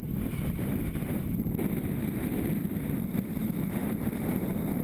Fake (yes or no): yes